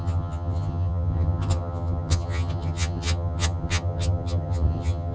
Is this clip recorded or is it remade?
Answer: remade